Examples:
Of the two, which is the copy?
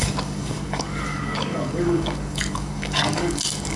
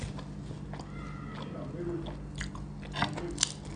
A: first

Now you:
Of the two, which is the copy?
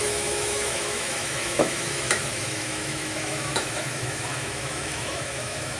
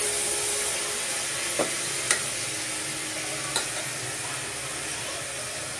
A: first